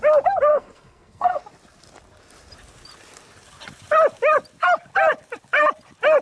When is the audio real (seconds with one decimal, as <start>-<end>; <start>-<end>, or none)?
0.0-0.5; 1.4-6.2